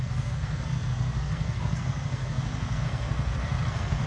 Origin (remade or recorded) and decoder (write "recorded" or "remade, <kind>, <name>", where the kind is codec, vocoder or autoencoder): remade, codec, SNAC